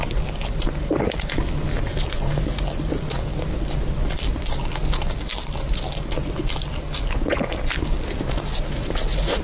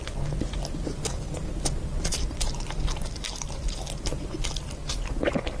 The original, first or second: first